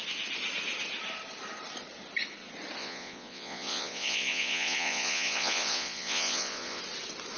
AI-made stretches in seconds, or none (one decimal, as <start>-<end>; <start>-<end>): 2.8-6.8